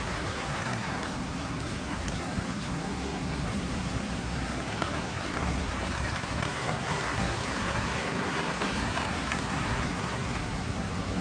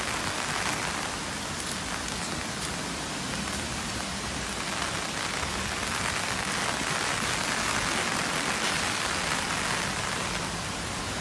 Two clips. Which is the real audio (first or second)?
second